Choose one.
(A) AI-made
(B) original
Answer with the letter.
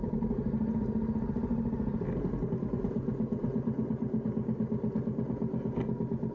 B